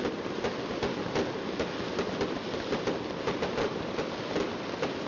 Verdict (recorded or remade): recorded